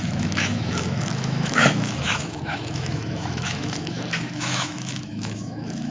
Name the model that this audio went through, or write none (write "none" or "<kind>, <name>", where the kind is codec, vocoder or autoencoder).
autoencoder, DAC-VAE